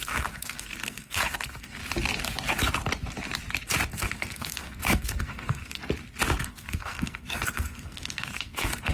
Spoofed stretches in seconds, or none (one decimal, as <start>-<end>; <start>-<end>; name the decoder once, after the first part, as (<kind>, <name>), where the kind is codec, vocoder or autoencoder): 0.0-1.8 (codec, SNAC); 3.9-5.8; 6.4-8.9